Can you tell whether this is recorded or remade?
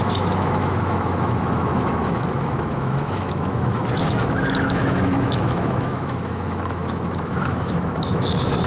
remade